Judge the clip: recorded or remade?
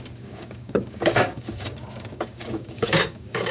remade